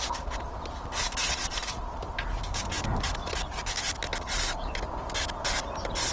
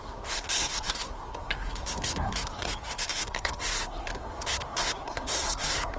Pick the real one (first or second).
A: first